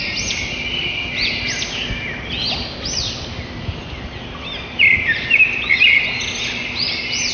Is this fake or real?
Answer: real